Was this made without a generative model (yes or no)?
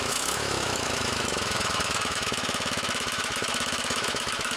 no